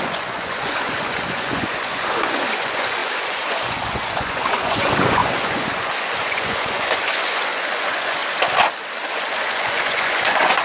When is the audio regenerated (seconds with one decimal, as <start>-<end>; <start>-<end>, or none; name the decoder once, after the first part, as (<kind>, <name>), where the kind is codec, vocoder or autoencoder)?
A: 0.0-8.2 (vocoder, Vocos); 9.0-10.6